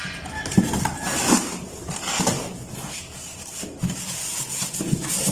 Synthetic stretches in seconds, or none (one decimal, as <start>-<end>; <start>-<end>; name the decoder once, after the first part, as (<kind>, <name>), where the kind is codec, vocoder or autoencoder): 1.1-3.4 (vocoder, BigVGAN v2)